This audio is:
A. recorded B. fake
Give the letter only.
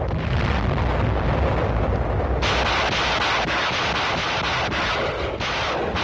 A